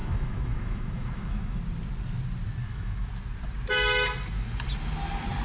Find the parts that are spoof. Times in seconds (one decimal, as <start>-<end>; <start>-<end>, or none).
0.0-1.6; 2.6-3.1